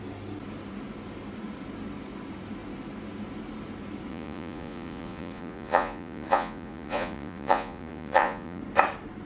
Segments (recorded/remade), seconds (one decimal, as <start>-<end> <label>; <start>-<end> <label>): 0.0-4.1 recorded; 4.1-8.6 remade; 8.6-9.3 recorded